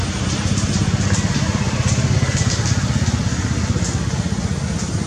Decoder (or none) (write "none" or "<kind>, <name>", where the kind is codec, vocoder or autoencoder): none